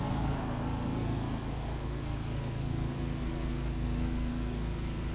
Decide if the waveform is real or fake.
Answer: fake